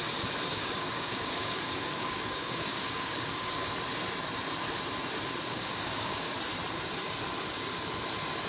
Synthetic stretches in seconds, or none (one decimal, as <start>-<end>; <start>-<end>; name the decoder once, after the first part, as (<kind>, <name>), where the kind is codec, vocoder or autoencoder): 0.5-3.7 (codec, DAC); 5.5-6.3